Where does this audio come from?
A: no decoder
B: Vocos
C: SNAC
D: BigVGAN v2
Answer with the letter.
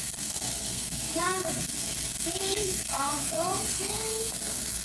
C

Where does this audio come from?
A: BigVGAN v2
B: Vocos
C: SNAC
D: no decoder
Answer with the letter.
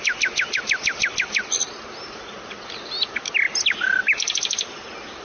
D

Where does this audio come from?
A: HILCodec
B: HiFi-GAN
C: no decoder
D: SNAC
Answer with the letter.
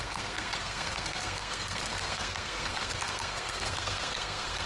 D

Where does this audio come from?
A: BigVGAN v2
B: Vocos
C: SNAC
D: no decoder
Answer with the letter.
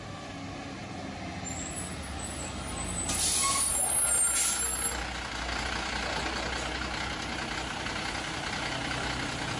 D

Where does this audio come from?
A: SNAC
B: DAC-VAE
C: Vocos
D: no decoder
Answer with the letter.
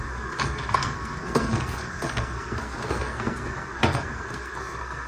A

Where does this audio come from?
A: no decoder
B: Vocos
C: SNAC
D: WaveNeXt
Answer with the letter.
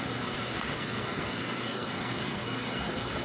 C